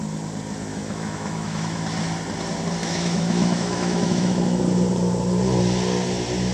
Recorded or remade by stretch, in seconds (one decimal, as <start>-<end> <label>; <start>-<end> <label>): 0.0-0.7 recorded; 0.7-1.8 remade; 1.8-2.8 recorded; 2.8-4.6 remade; 4.6-6.5 recorded